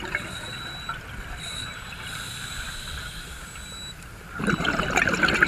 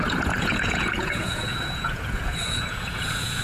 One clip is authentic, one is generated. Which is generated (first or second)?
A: second